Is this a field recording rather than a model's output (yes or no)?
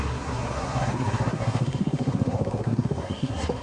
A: no